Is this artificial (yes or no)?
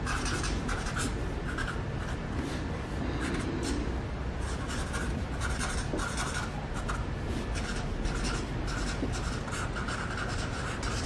no